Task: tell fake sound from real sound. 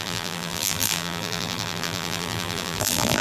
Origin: fake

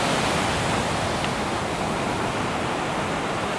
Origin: real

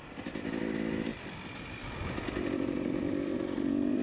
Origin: fake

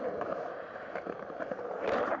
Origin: fake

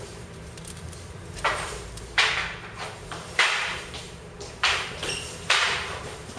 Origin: fake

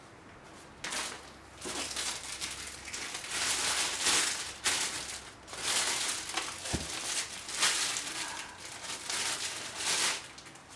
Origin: real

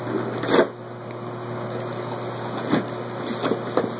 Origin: real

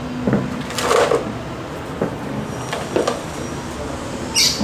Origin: real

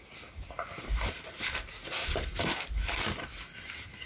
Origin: real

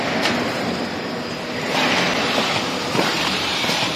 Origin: fake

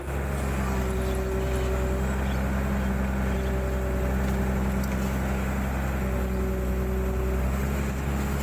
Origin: real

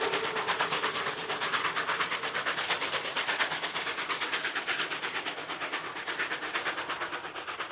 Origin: real